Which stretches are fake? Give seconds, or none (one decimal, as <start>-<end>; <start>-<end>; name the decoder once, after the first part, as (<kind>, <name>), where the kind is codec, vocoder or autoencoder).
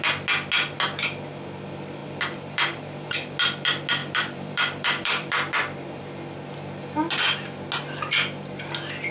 2.0-3.1 (vocoder, BigVGAN v2); 4.0-6.0